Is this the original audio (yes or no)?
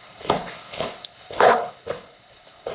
no